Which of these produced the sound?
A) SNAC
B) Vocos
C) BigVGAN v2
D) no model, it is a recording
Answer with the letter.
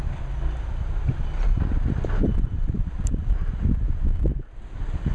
C